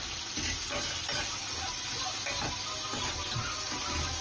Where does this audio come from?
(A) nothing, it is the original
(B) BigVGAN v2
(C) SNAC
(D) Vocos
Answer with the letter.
A